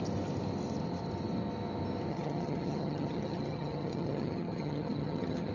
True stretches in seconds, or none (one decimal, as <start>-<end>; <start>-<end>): 0.0-2.1